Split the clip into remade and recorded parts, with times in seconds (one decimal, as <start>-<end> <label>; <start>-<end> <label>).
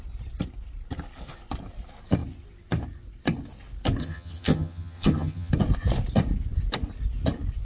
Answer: 0.0-4.0 recorded; 4.0-5.5 remade; 5.5-7.6 recorded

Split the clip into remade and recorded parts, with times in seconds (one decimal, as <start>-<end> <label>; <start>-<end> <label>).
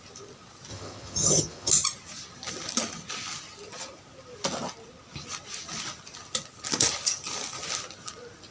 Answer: 0.0-0.7 recorded; 0.7-1.7 remade; 1.7-8.5 recorded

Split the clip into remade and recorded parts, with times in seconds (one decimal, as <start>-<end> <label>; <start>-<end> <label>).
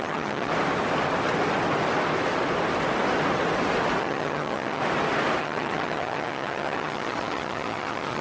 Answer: 0.0-0.5 remade; 0.5-4.0 recorded; 4.0-4.8 remade; 4.8-5.4 recorded; 5.4-8.2 remade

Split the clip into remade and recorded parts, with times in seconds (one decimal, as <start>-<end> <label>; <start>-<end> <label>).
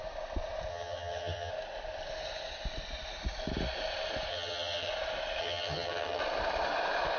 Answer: 0.0-0.7 recorded; 0.7-1.5 remade; 1.5-4.3 recorded; 4.3-4.9 remade; 4.9-5.4 recorded; 5.4-6.2 remade; 6.2-7.2 recorded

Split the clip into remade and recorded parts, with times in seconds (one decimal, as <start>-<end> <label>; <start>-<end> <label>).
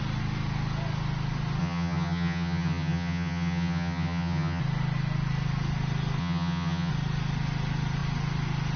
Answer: 0.0-1.6 recorded; 1.6-4.6 remade; 4.6-6.2 recorded; 6.2-6.9 remade; 6.9-8.8 recorded